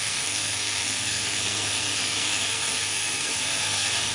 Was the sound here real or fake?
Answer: fake